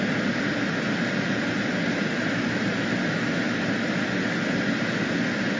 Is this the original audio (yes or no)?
yes